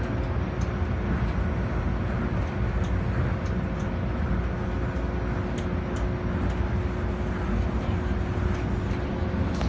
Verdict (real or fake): real